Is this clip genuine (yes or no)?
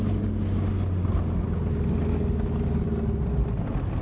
yes